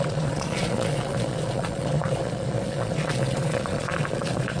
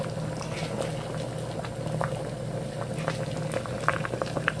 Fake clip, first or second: first